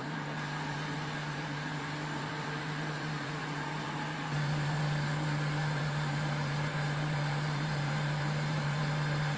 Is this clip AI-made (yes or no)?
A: yes